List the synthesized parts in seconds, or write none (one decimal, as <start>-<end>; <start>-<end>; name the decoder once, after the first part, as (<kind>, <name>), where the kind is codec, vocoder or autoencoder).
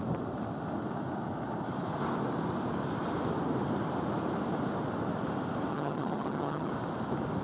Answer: 5.7-6.7 (vocoder, HiFi-GAN)